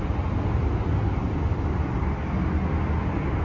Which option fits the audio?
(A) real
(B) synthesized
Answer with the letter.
A